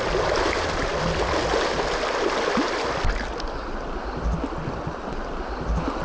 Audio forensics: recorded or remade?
recorded